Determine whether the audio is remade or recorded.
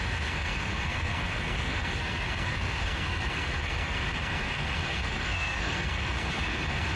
remade